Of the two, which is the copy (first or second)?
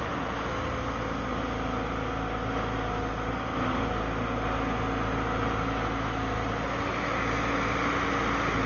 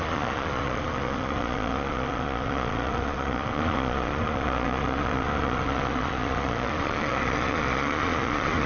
second